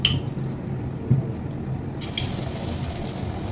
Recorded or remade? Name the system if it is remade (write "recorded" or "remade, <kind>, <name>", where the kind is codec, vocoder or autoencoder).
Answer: recorded